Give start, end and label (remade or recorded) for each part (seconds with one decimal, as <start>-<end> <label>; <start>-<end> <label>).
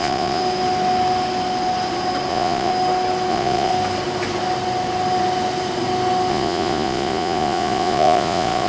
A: 0.0-0.4 remade; 0.4-2.3 recorded; 2.3-2.7 remade; 2.7-3.3 recorded; 3.3-3.7 remade; 3.7-6.3 recorded; 6.3-8.7 remade